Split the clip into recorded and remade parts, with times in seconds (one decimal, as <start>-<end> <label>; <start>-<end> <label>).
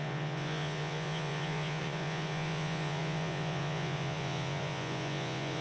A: 0.0-5.6 remade